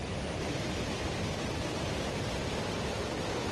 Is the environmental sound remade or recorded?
remade